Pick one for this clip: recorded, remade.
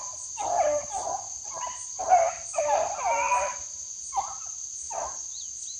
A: recorded